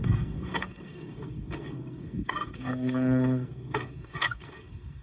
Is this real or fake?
fake